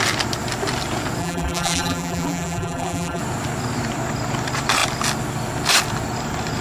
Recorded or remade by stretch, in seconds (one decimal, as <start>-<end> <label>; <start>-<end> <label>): 0.0-1.2 recorded; 1.2-3.2 remade; 3.2-6.6 recorded